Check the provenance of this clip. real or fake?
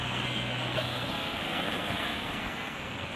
fake